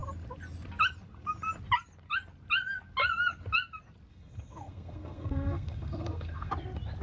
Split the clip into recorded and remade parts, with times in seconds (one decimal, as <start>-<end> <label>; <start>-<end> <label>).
0.0-4.1 recorded; 4.1-6.5 remade; 6.5-7.0 recorded